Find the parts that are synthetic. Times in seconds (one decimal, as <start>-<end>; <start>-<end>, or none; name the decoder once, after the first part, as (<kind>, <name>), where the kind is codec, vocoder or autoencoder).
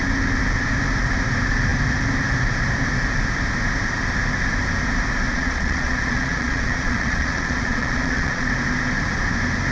5.3-8.5 (vocoder, Vocos)